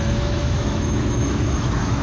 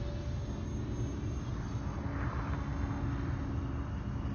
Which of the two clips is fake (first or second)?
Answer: first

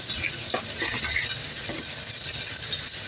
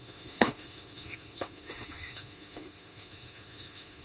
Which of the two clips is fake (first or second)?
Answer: second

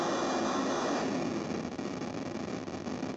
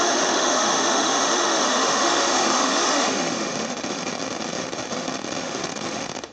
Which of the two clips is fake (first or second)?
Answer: second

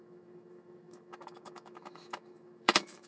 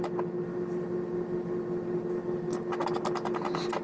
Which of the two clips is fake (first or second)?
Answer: first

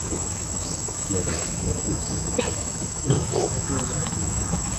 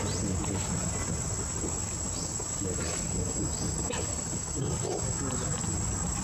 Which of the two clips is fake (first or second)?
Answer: first